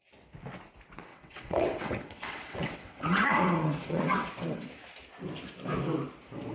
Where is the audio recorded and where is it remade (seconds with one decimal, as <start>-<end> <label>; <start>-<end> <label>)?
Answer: 0.0-1.1 recorded; 1.1-4.7 remade; 4.7-6.5 recorded